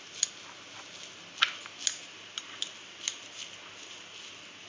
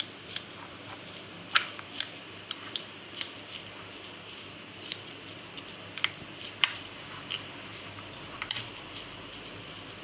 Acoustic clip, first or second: first